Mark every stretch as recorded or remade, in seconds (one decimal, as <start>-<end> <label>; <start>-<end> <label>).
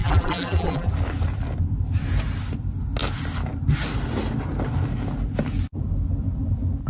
0.0-0.9 remade; 0.9-6.9 recorded